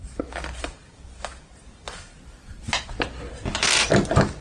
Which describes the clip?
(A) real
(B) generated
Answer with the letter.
A